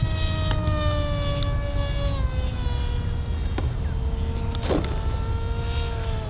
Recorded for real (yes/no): yes